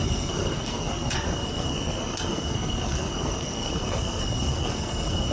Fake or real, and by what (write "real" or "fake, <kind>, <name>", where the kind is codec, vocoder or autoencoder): fake, codec, SNAC